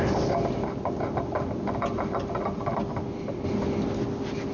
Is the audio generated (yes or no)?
no